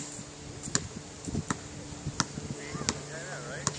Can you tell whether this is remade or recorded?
recorded